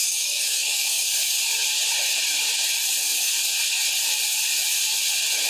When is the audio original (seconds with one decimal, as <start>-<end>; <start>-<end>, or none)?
1.2-5.5